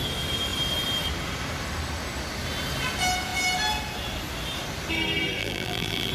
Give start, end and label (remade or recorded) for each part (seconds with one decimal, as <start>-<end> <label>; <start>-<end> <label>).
0.0-5.4 recorded; 5.4-6.1 remade